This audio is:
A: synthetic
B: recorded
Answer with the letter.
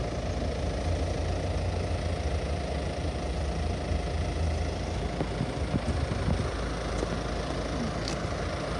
B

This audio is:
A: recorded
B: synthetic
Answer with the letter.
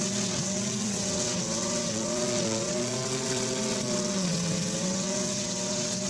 B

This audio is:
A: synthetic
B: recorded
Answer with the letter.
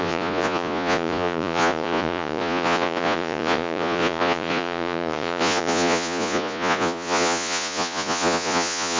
A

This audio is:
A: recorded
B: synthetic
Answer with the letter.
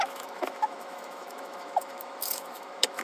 B